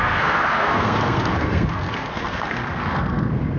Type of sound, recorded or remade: remade